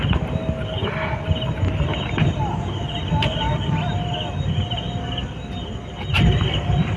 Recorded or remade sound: recorded